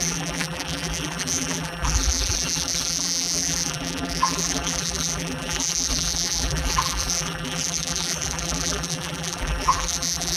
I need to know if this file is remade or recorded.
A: remade